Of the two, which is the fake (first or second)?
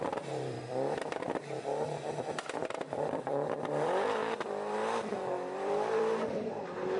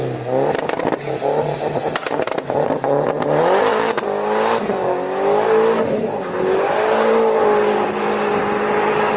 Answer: first